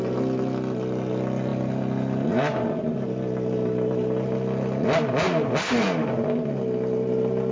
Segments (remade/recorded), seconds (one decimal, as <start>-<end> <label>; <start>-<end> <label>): 0.0-7.5 recorded